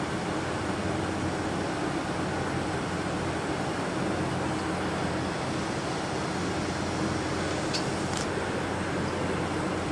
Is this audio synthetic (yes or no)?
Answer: no